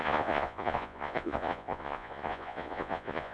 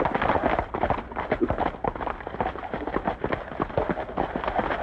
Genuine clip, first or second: second